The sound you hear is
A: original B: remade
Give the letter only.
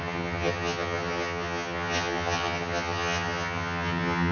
B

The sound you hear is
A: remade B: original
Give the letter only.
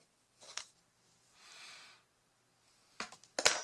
B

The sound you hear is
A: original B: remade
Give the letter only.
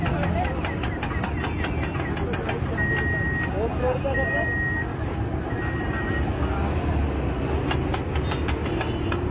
A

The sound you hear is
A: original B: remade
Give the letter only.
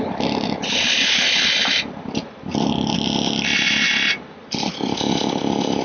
A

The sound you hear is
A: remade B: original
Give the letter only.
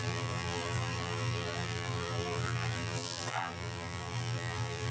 A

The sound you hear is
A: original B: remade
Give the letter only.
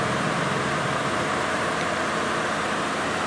B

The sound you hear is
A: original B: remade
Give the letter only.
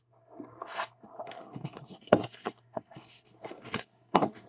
B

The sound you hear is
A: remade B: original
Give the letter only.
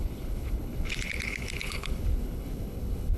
A